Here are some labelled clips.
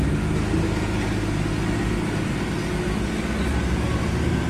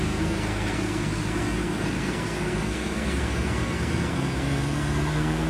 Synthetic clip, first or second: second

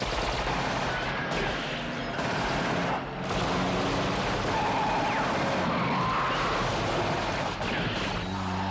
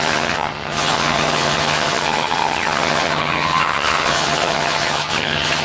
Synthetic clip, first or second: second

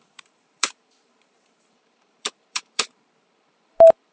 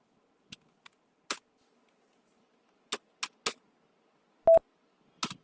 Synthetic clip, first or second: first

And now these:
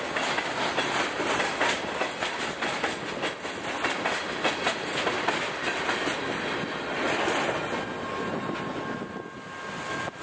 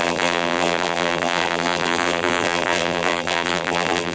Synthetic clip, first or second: second